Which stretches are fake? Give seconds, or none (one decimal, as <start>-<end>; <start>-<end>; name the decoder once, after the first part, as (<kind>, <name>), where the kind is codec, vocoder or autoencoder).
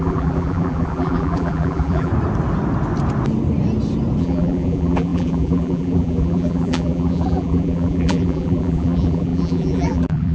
0.0-2.1 (vocoder, BigVGAN v2); 4.2-10.3